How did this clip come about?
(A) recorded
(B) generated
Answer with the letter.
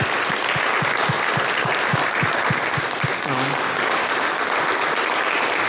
A